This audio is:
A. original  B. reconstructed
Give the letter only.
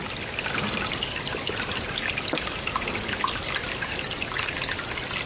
A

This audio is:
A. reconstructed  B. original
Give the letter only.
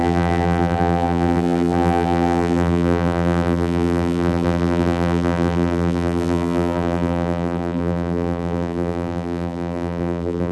A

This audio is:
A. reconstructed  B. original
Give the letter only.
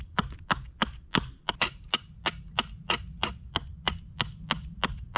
B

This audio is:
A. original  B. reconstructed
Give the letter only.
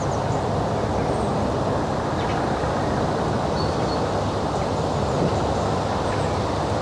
A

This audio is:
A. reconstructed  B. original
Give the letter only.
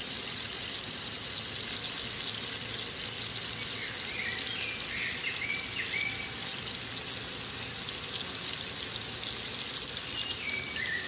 B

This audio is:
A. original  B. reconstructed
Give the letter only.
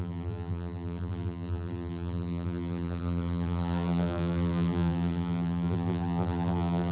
B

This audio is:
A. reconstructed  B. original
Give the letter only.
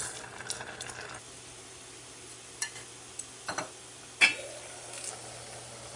B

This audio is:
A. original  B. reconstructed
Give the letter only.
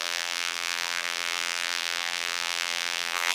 B